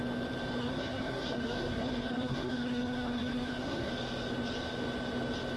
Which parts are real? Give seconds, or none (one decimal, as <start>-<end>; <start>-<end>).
0.0-0.6; 3.9-5.6